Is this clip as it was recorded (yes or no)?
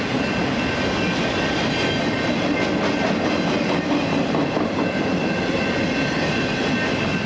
yes